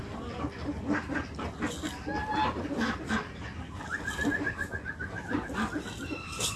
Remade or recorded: recorded